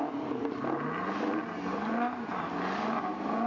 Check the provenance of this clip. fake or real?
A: real